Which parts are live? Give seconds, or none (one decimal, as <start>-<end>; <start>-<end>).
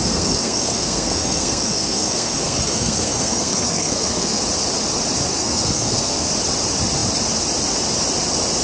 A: 4.4-5.3; 6.3-8.6